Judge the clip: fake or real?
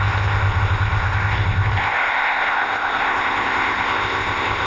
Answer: fake